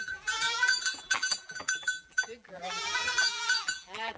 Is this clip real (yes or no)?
no